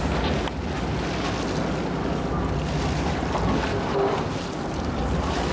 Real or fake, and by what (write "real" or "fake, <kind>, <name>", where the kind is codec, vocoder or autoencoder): real